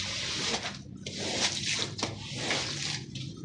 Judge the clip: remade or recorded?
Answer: recorded